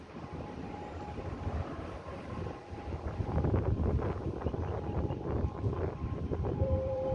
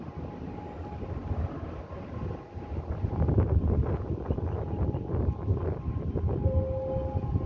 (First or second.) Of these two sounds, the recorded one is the second